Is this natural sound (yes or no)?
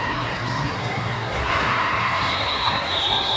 no